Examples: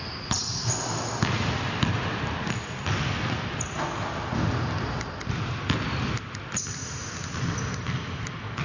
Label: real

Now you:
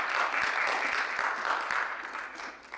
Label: real